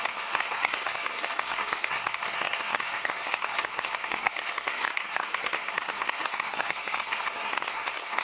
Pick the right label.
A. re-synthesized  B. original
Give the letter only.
A